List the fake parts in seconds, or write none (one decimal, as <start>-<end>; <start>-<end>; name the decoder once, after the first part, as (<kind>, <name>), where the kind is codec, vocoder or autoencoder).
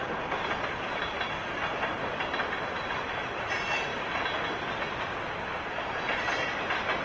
none